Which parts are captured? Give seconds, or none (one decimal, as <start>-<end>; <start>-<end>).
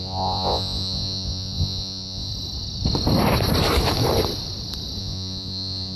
2.3-5.0